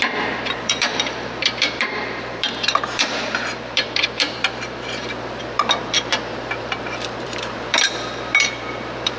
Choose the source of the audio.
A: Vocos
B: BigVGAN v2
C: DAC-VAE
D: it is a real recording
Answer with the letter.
B